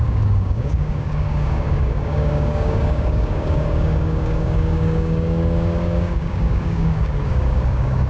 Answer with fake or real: fake